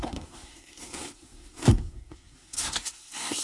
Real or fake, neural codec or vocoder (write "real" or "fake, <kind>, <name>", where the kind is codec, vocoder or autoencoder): fake, codec, SNAC